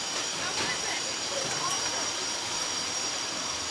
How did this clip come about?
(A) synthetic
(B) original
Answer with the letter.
A